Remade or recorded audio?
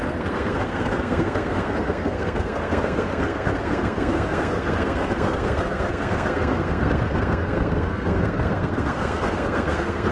remade